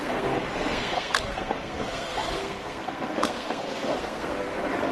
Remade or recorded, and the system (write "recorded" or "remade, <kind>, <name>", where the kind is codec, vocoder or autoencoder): remade, codec, SNAC